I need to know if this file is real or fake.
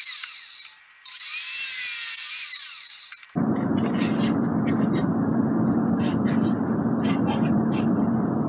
fake